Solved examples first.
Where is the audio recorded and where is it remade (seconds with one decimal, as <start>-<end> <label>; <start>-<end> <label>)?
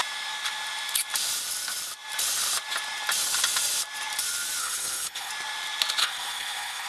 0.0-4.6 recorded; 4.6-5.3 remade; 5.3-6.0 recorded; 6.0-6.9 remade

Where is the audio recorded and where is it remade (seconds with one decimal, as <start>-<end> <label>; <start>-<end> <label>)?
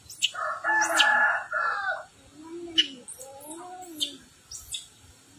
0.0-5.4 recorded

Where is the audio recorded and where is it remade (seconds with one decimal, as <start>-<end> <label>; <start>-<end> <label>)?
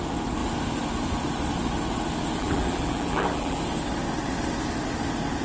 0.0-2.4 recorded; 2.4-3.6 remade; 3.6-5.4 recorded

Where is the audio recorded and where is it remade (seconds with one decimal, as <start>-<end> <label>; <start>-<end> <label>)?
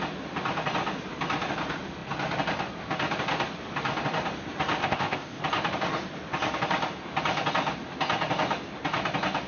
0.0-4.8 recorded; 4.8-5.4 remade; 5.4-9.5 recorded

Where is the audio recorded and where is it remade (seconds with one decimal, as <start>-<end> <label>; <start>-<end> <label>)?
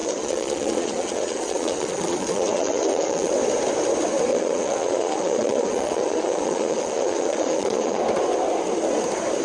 0.0-3.3 remade; 3.3-4.3 recorded; 4.3-8.0 remade; 8.0-9.4 recorded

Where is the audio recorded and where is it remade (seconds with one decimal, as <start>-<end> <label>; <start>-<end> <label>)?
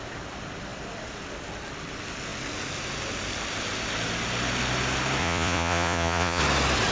0.0-5.2 recorded; 5.2-6.4 remade; 6.4-6.9 recorded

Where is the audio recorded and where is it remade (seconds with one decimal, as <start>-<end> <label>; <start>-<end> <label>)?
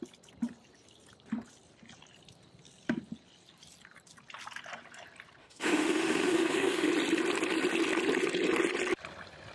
0.0-5.4 recorded; 5.4-6.9 remade; 6.9-9.5 recorded